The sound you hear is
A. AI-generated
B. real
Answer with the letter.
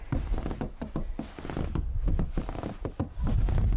B